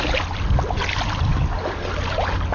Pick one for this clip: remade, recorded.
recorded